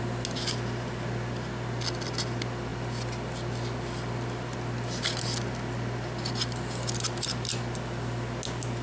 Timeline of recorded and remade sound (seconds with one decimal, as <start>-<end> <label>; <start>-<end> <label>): 0.0-8.8 recorded